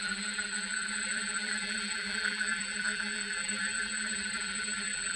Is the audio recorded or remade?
remade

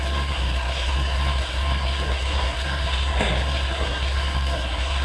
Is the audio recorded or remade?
remade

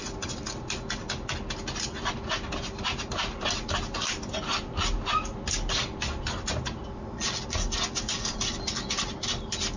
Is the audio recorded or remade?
recorded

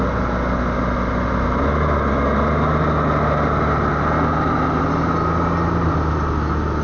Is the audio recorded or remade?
recorded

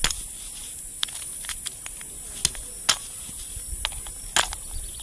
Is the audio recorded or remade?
recorded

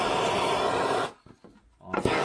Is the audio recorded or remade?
recorded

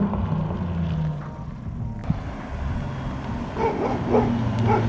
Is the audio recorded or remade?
recorded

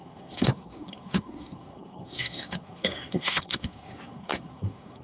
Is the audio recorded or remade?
remade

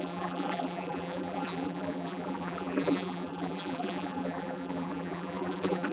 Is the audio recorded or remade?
remade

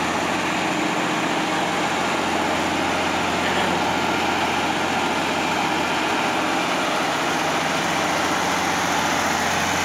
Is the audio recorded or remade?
recorded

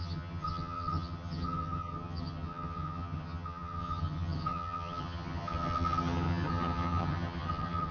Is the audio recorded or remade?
remade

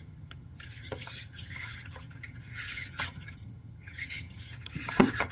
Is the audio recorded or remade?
remade